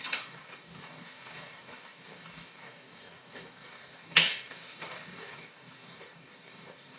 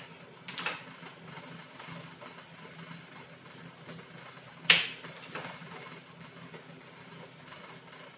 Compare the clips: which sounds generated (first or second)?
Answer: first